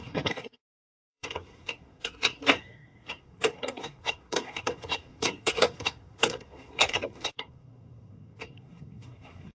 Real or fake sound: fake